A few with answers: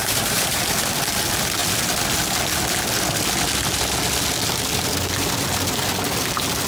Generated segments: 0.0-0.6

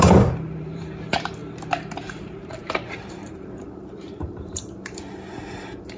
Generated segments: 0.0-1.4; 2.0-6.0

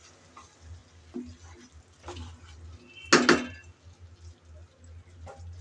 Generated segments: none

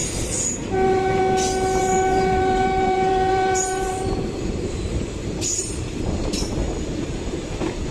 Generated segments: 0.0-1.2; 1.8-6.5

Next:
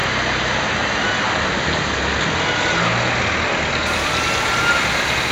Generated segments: none

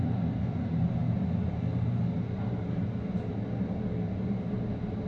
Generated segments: 0.0-1.0; 2.5-3.3

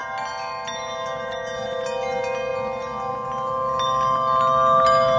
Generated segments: none